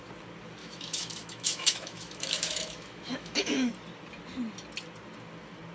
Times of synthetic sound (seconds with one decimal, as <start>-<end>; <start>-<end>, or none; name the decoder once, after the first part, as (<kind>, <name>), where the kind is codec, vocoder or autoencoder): 0.6-3.7 (autoencoder, DAC-VAE)